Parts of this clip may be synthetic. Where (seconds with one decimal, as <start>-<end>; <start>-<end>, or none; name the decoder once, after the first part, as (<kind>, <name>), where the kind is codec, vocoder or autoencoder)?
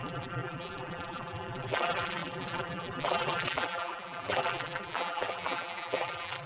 0.0-6.5 (vocoder, BigVGAN v2)